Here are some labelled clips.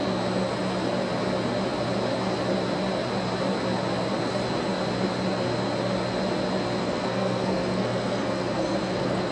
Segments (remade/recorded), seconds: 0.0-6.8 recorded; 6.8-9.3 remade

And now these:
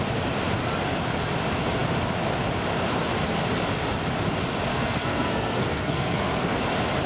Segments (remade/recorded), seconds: 0.0-4.7 recorded; 4.7-6.6 remade; 6.6-7.1 recorded